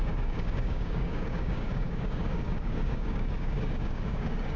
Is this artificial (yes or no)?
yes